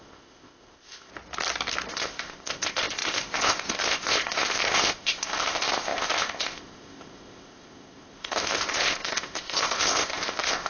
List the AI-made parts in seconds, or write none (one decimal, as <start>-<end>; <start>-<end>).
0.0-1.1; 1.9-10.7